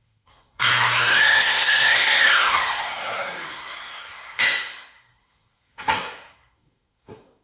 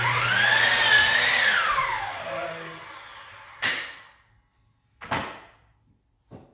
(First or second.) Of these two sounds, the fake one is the first